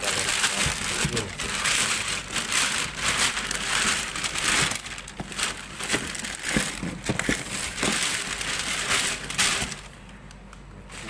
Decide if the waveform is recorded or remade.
recorded